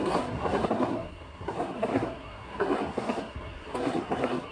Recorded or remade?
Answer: remade